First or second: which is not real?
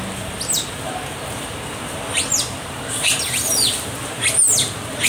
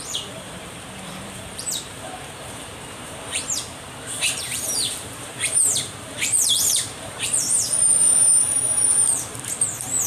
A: second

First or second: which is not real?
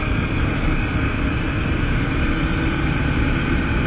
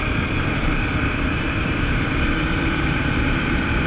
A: second